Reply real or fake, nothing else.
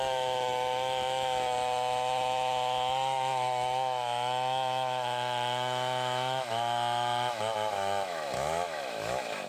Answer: fake